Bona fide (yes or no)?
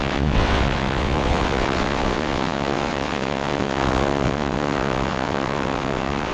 no